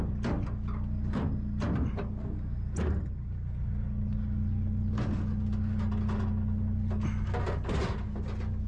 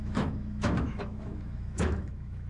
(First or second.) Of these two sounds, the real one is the first